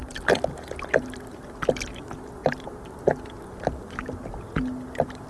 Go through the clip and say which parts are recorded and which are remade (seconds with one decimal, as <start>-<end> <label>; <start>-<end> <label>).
0.0-2.4 recorded; 2.4-3.0 remade; 3.0-5.3 recorded